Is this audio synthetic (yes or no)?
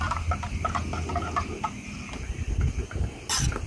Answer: no